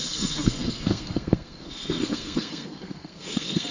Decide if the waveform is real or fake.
fake